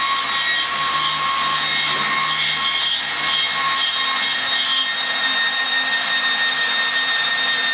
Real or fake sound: real